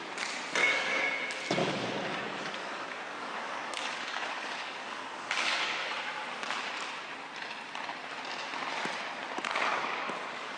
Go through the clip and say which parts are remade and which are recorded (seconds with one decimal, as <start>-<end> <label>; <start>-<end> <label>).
0.0-0.6 recorded; 0.6-1.2 remade; 1.2-1.6 recorded; 1.6-5.9 remade; 5.9-9.7 recorded; 9.7-10.6 remade